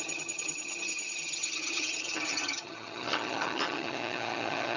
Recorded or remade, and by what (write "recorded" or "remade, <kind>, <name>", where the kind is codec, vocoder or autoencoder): remade, vocoder, HiFi-GAN